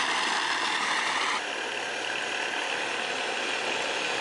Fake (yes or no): no